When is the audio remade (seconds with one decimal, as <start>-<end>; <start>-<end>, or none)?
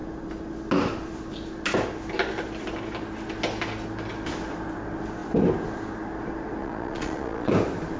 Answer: 6.6-7.5